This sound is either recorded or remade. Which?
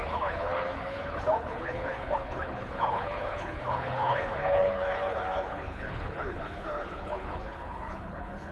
remade